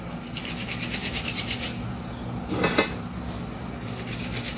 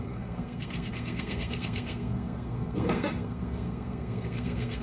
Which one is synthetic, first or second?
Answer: second